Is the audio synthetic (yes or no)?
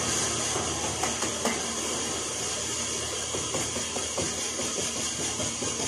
no